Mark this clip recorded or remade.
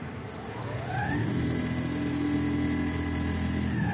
recorded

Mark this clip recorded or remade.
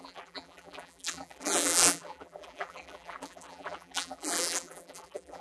remade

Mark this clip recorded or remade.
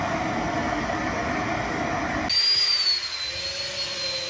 recorded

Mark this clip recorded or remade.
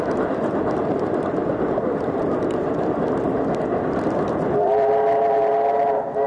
remade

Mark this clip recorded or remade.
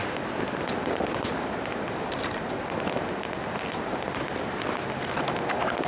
remade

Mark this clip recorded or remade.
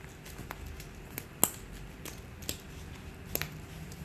recorded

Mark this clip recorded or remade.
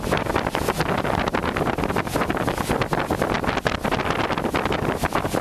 recorded